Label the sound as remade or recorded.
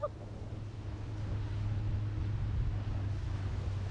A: recorded